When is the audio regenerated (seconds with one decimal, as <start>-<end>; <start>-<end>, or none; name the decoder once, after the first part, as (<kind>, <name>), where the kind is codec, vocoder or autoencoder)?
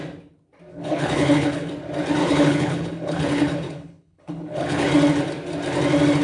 0.7-1.7 (codec, HILCodec); 2.2-4.9